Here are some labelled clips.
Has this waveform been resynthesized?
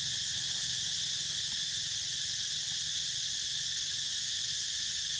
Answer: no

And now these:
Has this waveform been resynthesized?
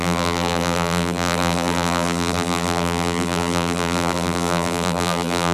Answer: yes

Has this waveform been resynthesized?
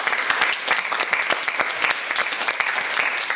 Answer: no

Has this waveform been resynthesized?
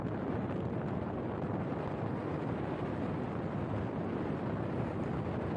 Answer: no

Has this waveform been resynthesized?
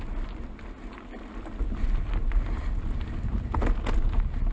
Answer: no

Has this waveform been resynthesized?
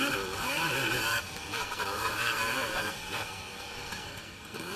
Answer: yes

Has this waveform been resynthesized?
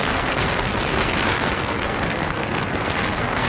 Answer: yes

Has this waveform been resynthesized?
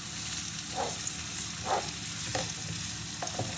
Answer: no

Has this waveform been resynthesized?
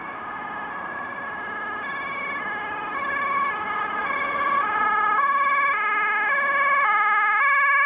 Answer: no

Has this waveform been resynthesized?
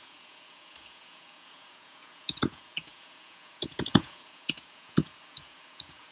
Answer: yes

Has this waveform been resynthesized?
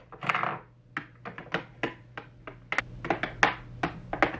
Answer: no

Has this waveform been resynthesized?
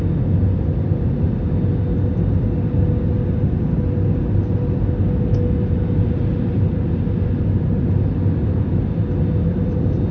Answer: no